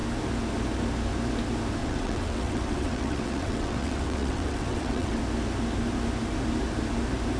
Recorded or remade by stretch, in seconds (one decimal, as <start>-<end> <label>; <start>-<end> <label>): 0.0-1.8 recorded; 1.8-5.2 remade; 5.2-7.4 recorded